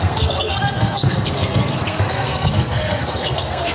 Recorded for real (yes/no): no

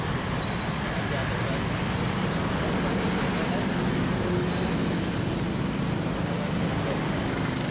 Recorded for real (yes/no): yes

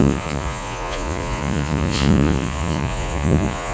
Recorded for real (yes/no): no